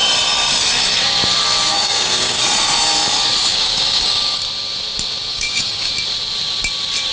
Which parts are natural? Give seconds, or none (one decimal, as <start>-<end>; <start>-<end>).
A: 0.0-1.7; 2.4-3.5; 4.4-5.3; 5.9-7.1